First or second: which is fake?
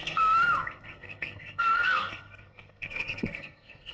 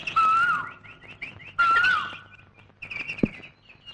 first